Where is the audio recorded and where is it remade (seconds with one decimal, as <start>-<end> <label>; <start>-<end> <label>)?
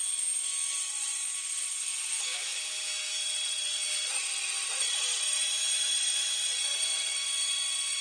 0.0-0.7 recorded; 0.7-2.1 remade; 2.1-3.2 recorded; 3.2-8.0 remade